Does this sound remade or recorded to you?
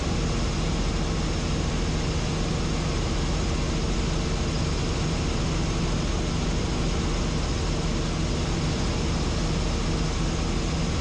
recorded